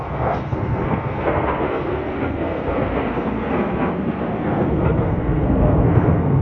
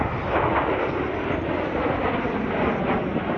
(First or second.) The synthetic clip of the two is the first